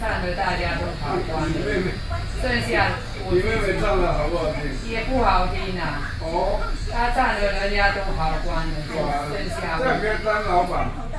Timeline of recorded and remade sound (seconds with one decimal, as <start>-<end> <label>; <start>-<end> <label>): 0.0-0.4 recorded; 0.4-2.0 remade; 2.0-6.4 recorded; 6.4-9.8 remade; 9.8-11.2 recorded